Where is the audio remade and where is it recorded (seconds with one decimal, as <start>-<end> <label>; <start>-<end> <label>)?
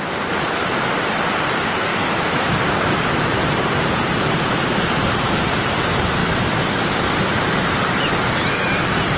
0.0-6.2 remade; 6.2-6.7 recorded; 6.7-9.2 remade